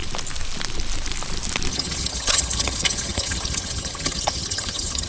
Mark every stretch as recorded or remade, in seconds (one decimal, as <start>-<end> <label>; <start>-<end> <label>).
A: 0.0-1.7 recorded; 1.7-5.1 remade